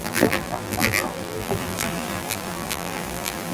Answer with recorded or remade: remade